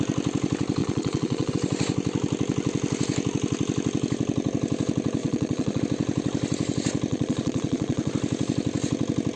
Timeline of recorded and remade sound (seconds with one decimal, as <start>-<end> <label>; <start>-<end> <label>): 0.0-0.8 recorded; 0.8-1.5 remade; 1.5-5.2 recorded; 5.2-5.8 remade; 5.8-7.1 recorded; 7.1-8.1 remade; 8.1-9.4 recorded